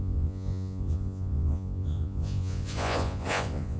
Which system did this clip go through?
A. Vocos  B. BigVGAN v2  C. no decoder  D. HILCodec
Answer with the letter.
A